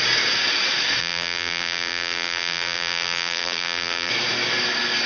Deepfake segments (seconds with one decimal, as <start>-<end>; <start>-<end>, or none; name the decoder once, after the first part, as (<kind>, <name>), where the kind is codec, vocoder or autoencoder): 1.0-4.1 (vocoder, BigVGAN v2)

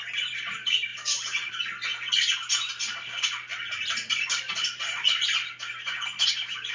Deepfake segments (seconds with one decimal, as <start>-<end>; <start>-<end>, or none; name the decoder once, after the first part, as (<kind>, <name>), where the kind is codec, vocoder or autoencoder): 0.9-1.5 (vocoder, BigVGAN v2); 3.5-5.1

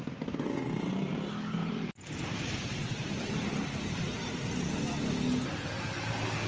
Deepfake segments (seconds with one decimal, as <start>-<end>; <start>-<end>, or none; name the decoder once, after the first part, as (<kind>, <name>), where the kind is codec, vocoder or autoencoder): 1.6-3.5 (vocoder, BigVGAN v2)

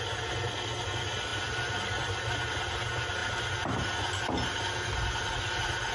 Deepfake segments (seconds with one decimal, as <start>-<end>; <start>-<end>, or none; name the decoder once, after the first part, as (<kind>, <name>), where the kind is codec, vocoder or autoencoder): 1.3-2.2 (vocoder, BigVGAN v2)

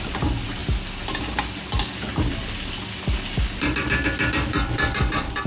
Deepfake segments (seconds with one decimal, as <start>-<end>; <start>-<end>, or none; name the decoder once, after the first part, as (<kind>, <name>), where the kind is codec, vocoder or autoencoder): none

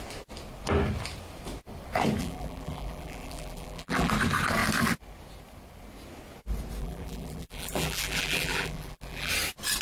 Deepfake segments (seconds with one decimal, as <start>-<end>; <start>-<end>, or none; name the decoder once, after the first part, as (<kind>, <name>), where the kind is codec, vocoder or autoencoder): 2.2-4.1 (vocoder, BigVGAN v2); 6.8-9.3

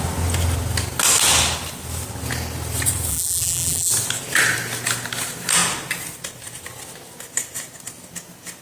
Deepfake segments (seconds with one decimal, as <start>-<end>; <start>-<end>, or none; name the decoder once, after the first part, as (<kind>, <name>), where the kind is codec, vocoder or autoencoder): 3.1-3.9 (vocoder, BigVGAN v2)

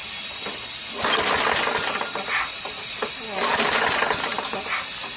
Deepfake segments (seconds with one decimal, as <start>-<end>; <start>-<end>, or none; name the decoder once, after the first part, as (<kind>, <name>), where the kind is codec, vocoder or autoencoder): 3.5-4.7 (vocoder, BigVGAN v2)